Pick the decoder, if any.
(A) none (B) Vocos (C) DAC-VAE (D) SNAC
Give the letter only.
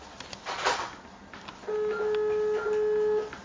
A